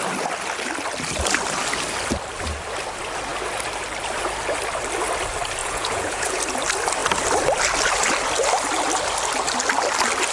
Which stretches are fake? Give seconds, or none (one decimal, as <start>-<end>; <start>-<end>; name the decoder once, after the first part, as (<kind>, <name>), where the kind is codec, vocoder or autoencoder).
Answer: 5.6-6.4 (vocoder, Vocos)